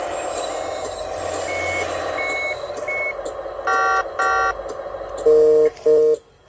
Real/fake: real